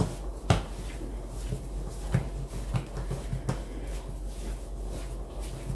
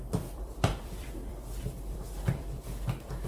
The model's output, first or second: second